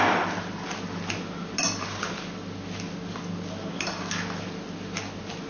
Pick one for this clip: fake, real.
real